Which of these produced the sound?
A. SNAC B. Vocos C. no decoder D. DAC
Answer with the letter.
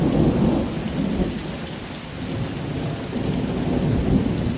C